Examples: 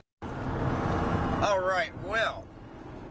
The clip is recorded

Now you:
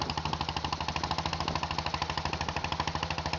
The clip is recorded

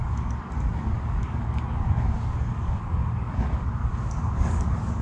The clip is remade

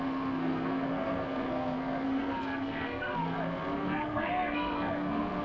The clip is remade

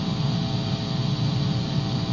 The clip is recorded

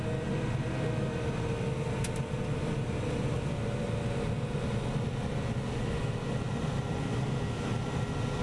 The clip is recorded